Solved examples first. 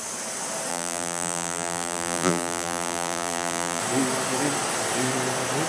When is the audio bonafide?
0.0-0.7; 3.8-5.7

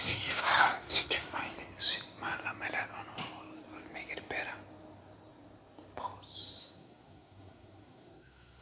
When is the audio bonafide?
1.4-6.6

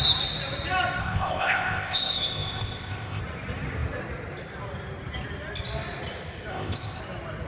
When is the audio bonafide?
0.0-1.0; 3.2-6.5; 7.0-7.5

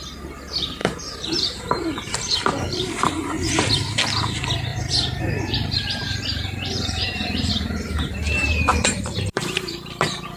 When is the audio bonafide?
0.0-0.8; 3.7-4.7; 7.5-8.7